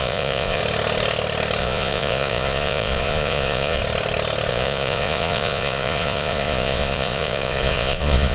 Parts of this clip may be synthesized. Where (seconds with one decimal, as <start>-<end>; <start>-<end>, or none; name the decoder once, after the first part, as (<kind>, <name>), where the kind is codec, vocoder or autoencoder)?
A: 0.0-0.6 (vocoder, Vocos); 1.6-3.8; 4.5-8.3